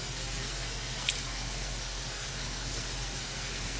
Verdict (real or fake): fake